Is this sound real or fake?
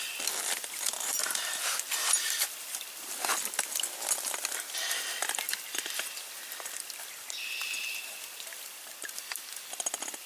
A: real